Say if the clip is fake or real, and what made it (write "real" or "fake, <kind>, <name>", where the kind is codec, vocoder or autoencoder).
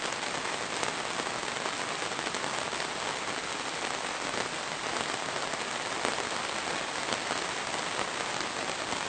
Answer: real